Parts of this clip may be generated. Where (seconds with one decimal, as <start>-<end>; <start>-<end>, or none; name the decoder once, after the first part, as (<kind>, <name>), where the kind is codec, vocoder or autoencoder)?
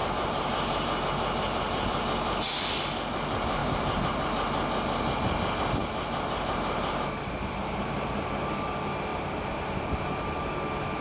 0.0-0.9 (vocoder, BigVGAN v2); 3.6-4.2; 5.8-8.3; 9.1-9.8